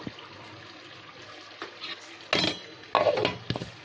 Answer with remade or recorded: recorded